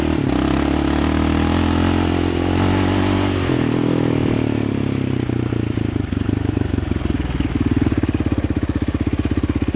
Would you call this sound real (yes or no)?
yes